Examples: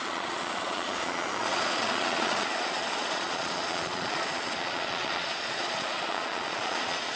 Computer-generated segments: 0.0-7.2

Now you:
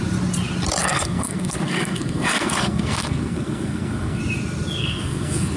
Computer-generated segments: 0.8-4.2; 4.8-5.6